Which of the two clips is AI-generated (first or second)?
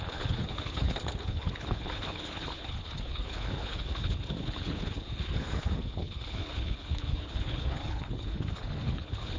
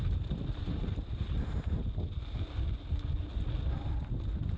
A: first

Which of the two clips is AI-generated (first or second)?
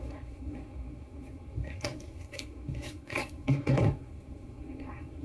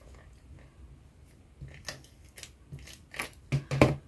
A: first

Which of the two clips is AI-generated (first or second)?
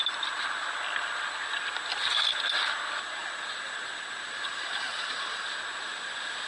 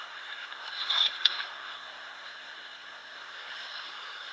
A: second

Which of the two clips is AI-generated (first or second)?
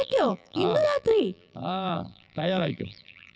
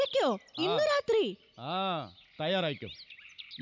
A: first